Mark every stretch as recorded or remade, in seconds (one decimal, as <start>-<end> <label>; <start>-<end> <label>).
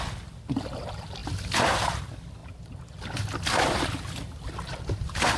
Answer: 0.0-5.4 recorded